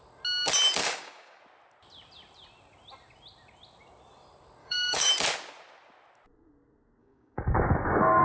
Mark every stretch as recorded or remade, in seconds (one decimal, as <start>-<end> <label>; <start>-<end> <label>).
0.0-0.8 recorded; 0.8-1.4 remade; 1.4-4.6 recorded; 4.6-5.1 remade; 5.1-7.0 recorded; 7.0-8.2 remade